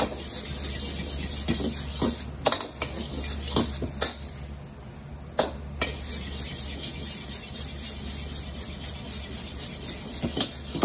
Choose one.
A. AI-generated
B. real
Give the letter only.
B